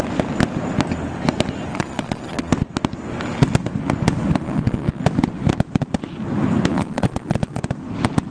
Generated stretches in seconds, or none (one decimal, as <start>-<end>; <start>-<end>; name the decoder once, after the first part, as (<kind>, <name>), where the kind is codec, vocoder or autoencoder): 1.7-2.5 (vocoder, Vocos); 4.4-5.0; 6.7-7.6